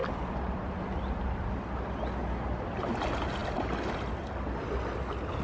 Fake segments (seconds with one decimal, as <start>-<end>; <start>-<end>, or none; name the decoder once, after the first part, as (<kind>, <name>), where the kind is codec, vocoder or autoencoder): 0.0-1.2 (vocoder, BigVGAN v2); 2.2-2.9